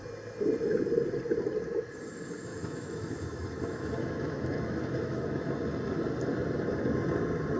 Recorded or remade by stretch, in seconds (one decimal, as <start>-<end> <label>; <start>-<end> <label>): 0.0-2.5 recorded; 2.5-5.5 remade; 5.5-7.6 recorded